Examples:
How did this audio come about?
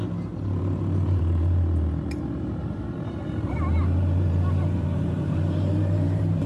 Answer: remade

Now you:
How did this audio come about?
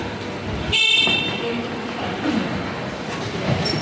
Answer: remade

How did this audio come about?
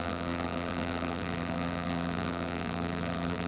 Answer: remade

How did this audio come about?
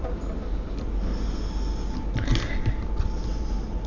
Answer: recorded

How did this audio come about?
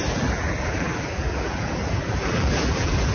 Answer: remade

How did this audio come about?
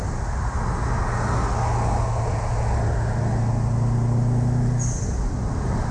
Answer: recorded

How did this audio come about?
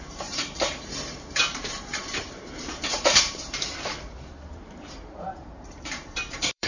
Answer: remade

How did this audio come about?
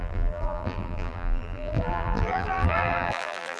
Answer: remade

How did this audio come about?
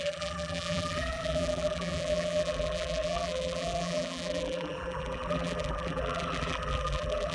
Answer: remade